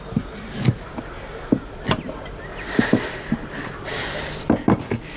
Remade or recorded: recorded